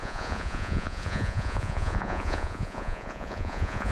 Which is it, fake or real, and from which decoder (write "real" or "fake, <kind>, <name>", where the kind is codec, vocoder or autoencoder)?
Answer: fake, vocoder, Vocos